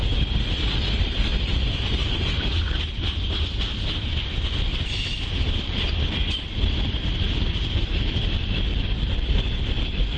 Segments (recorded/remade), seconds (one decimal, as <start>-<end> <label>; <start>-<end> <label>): 0.0-4.1 remade; 4.1-5.1 recorded; 5.1-10.2 remade